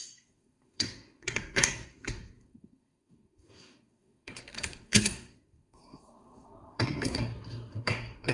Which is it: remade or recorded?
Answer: remade